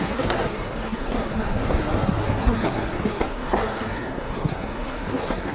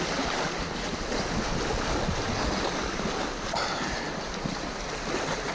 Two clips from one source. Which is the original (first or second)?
second